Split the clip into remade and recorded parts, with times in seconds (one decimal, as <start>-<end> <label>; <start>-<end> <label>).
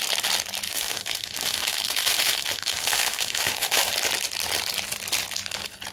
0.0-0.7 recorded; 0.7-3.9 remade; 3.9-5.9 recorded